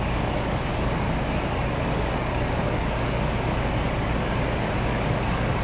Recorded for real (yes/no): no